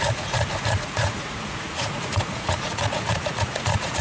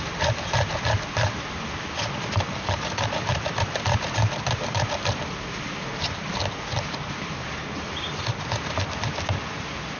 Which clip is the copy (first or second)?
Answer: first